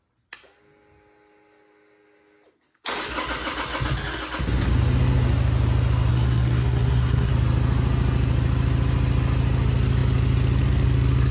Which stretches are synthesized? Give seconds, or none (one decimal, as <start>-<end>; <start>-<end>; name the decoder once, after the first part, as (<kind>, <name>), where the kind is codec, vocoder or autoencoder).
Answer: 6.1-7.3 (codec, SNAC)